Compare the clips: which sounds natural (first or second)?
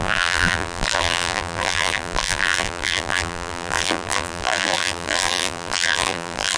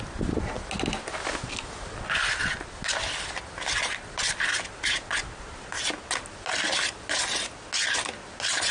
second